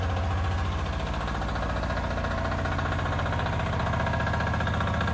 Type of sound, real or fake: real